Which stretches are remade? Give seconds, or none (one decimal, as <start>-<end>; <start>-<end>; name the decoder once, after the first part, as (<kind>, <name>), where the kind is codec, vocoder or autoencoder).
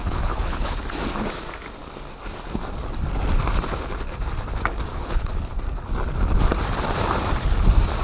0.0-0.8 (codec, HILCodec); 4.9-5.5